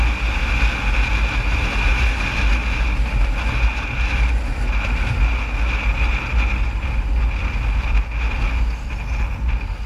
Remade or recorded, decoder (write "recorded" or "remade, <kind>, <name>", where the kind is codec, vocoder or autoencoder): recorded